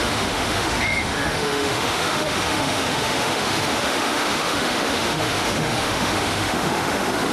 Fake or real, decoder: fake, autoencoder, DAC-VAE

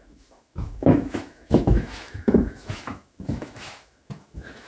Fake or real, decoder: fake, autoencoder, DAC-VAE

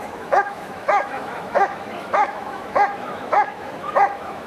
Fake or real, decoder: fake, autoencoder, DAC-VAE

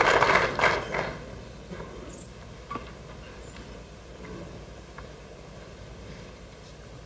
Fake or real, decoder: real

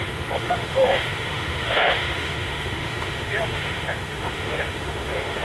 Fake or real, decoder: fake, autoencoder, DAC-VAE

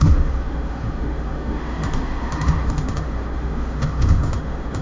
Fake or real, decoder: fake, autoencoder, DAC-VAE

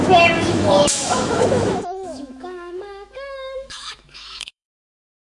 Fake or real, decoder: fake, autoencoder, DAC-VAE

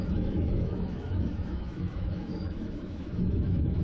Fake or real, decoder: fake, autoencoder, DAC-VAE